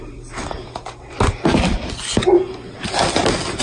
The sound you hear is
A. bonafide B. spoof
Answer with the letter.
A